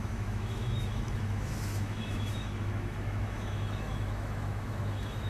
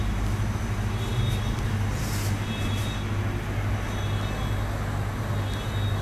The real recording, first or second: second